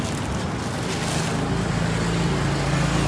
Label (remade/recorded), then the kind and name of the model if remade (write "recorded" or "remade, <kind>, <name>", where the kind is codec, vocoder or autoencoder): recorded